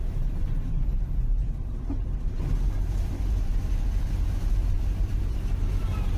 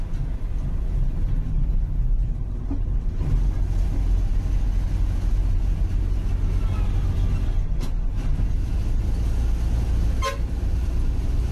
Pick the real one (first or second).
second